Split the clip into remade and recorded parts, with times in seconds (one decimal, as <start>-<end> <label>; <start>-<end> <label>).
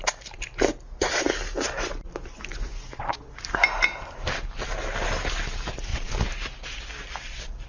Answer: 0.0-2.5 recorded; 2.5-3.3 remade; 3.3-7.7 recorded